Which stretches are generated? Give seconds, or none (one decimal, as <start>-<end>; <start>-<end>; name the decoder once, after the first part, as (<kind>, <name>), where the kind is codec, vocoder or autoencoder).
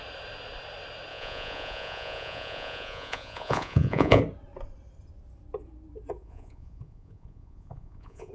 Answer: 1.1-4.2 (vocoder, Vocos); 6.2-8.3